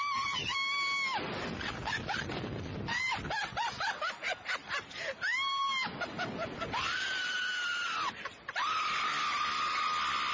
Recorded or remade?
recorded